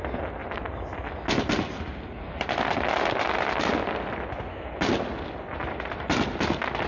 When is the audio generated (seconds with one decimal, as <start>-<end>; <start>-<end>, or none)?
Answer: 0.4-1.0